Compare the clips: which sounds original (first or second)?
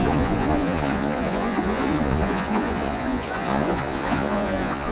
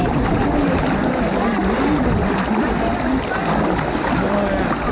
second